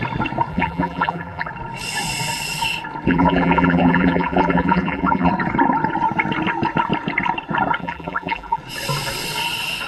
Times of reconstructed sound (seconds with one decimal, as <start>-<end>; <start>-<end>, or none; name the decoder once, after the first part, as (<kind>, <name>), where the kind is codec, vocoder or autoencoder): 0.5-1.5 (vocoder, BigVGAN v2); 3.1-5.3; 7.8-8.6

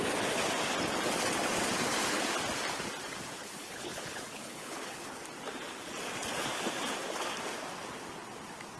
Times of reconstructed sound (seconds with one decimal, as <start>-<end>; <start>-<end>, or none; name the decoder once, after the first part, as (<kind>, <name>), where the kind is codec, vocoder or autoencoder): 3.4-5.2 (codec, HILCodec)

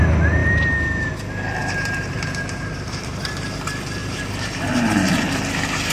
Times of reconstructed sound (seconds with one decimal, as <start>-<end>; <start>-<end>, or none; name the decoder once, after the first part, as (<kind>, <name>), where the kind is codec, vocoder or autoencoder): 0.4-1.1 (vocoder, BigVGAN v2); 1.6-3.6; 4.0-4.6

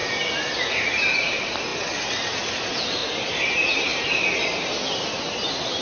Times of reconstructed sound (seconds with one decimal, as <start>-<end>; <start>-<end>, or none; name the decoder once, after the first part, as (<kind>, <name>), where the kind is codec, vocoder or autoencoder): 1.0-1.7 (vocoder, BigVGAN v2); 2.5-5.8

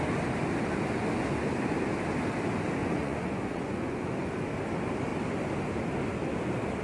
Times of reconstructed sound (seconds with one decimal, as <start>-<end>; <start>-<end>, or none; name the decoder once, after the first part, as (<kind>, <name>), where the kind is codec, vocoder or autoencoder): 2.8-4.3 (vocoder, Vocos)

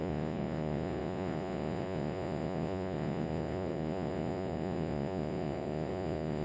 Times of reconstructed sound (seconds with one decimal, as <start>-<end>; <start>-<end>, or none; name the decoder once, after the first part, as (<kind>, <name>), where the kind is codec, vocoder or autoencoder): 0.0-6.4 (vocoder, Vocos)

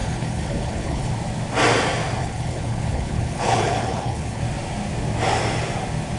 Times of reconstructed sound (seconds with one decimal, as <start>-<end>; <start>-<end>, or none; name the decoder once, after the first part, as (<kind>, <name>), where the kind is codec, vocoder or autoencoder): 0.0-1.1 (codec, HILCodec); 2.2-4.4